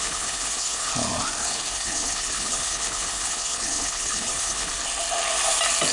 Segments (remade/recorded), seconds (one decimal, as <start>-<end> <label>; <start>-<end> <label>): 0.0-0.9 remade; 0.9-1.4 recorded; 1.4-4.7 remade; 4.7-5.9 recorded